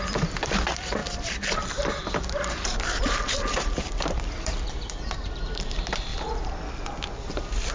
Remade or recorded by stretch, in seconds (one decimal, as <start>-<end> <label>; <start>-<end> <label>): 0.0-1.0 remade; 1.0-1.5 recorded; 1.5-6.1 remade; 6.1-7.2 recorded; 7.2-7.7 remade